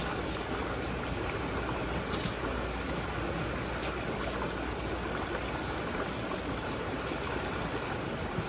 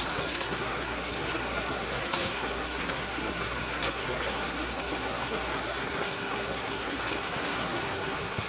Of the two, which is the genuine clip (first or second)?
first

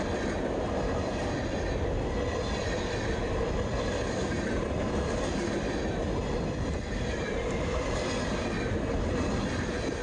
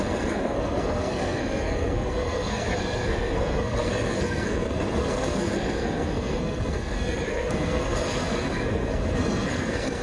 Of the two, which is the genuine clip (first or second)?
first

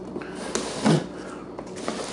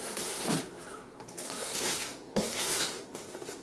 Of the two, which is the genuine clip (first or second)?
first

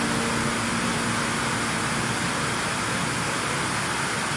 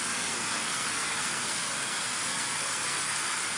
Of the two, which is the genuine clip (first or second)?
first